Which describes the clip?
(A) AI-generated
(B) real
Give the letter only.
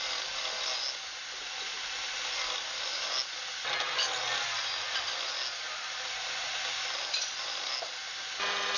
B